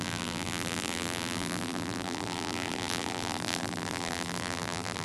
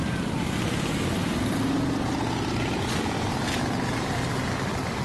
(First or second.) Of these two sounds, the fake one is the first